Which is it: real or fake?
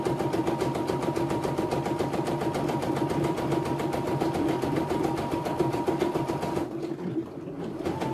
fake